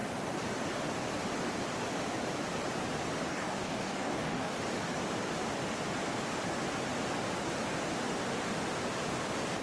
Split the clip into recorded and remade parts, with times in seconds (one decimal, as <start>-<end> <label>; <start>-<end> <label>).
0.0-3.3 recorded; 3.3-4.6 remade; 4.6-9.6 recorded